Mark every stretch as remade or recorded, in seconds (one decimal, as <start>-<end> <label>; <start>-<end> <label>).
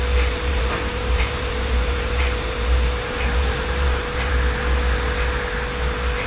0.0-0.5 recorded; 0.5-4.3 remade; 4.3-6.3 recorded